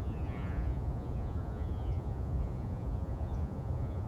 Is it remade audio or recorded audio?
remade